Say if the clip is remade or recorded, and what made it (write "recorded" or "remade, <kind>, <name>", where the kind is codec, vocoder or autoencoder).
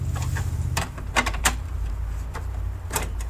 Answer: remade, vocoder, BigVGAN v2